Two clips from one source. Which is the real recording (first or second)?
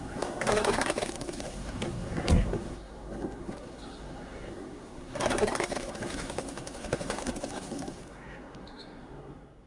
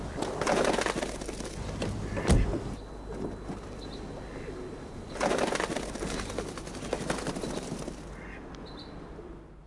second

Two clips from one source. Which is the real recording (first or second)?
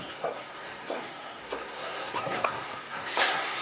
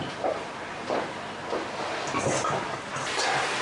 second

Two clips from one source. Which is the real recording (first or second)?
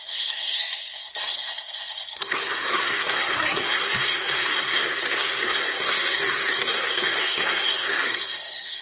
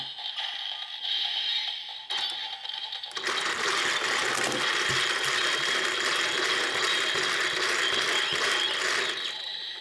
second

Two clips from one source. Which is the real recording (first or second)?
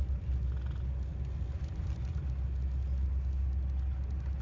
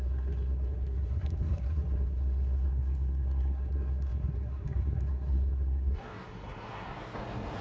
first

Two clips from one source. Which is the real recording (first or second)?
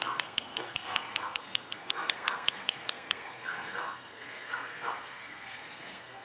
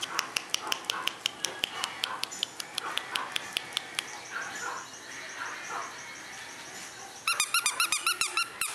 second